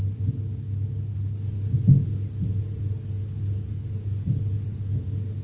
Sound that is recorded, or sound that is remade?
recorded